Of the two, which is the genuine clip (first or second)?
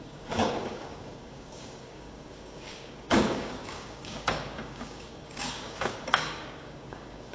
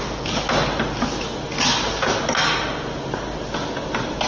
second